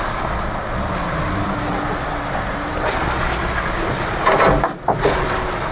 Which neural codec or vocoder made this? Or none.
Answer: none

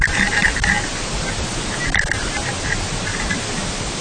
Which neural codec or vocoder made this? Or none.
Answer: none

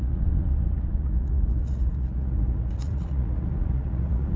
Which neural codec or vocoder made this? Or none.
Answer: vocoder, Vocos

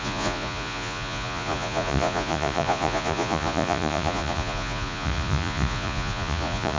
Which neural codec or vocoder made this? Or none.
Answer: vocoder, Vocos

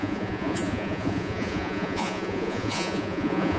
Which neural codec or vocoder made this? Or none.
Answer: vocoder, Vocos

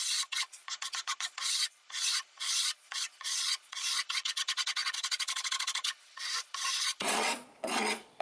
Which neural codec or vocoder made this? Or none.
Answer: vocoder, Vocos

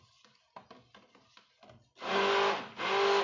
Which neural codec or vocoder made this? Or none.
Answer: none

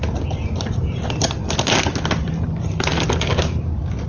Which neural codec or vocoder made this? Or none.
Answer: none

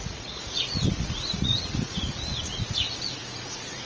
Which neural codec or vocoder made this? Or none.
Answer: vocoder, Vocos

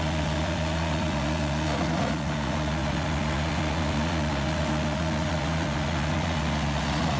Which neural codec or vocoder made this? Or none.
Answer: vocoder, Vocos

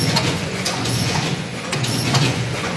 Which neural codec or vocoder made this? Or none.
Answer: vocoder, Vocos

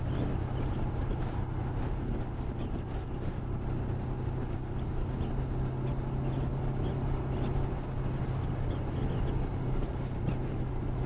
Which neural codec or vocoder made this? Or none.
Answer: none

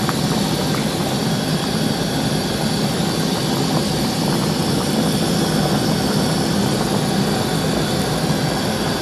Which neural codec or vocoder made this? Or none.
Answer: none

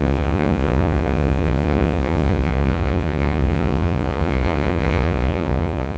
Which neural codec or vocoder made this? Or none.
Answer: vocoder, Vocos